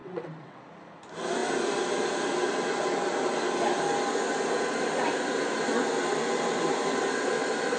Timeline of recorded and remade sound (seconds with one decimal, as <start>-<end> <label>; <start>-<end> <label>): 0.0-0.6 remade; 0.6-7.8 recorded